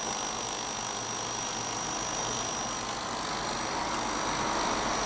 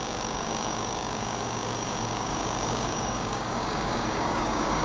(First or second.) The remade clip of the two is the second